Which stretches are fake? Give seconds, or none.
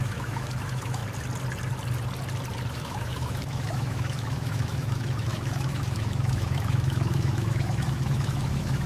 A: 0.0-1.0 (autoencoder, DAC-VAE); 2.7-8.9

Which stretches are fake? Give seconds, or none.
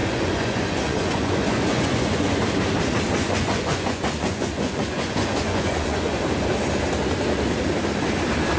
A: 0.0-2.4 (vocoder, Vocos); 3.2-6.2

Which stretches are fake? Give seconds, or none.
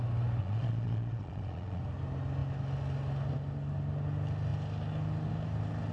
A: 0.4-1.8 (vocoder, Vocos)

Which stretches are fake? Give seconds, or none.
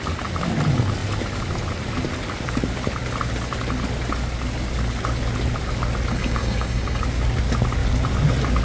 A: 6.1-7.0 (codec, DAC)